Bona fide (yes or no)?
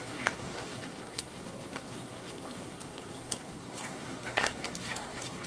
no